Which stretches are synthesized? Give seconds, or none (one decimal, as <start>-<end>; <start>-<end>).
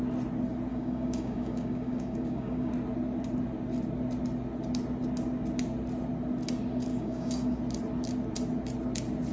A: 0.7-2.7; 6.9-7.6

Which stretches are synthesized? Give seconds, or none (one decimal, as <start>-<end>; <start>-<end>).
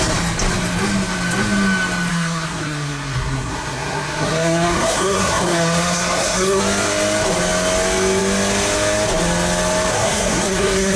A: 2.1-6.6; 9.9-11.0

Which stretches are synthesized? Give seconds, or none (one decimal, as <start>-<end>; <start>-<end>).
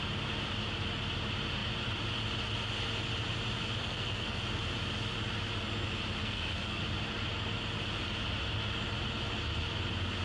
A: 3.8-4.4; 6.2-6.8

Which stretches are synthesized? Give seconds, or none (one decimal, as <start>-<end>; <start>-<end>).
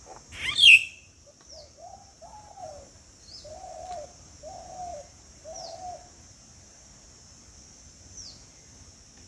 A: 0.8-2.6; 4.9-5.8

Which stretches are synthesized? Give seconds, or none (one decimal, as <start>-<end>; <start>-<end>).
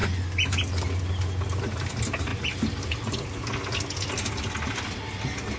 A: none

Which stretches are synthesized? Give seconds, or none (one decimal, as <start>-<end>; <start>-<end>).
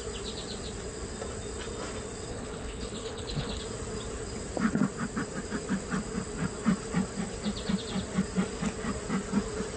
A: 2.3-3.6